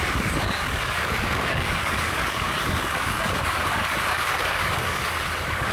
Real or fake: fake